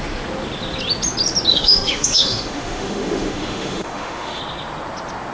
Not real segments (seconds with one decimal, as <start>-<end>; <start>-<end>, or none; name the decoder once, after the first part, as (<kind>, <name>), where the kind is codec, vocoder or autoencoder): 1.5-4.4 (autoencoder, DAC-VAE)